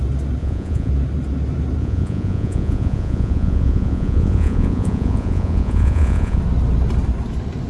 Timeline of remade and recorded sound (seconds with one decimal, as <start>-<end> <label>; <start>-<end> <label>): 0.0-0.4 recorded; 0.4-0.9 remade; 0.9-1.8 recorded; 1.8-6.4 remade; 6.4-7.7 recorded

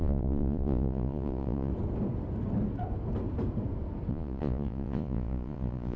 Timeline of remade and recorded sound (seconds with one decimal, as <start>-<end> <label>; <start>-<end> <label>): 0.0-1.7 remade; 1.7-4.1 recorded; 4.1-6.0 remade

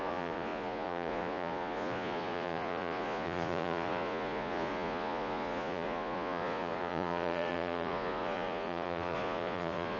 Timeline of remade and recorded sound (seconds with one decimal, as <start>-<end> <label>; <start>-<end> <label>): 0.0-10.0 remade

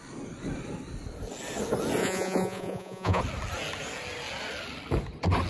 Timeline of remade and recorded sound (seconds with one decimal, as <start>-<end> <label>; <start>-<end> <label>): 0.0-2.0 recorded; 2.0-3.2 remade; 3.2-5.5 recorded